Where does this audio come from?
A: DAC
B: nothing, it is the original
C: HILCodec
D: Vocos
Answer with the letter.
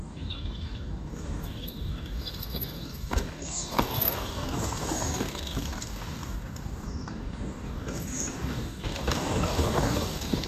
A